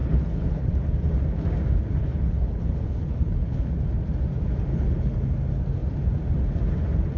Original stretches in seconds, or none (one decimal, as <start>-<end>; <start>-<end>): 0.7-2.0; 3.7-4.7; 5.3-7.2